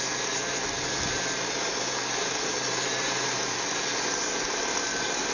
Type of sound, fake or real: real